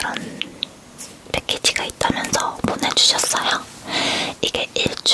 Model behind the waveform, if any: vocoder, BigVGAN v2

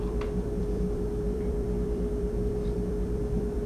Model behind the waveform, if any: vocoder, BigVGAN v2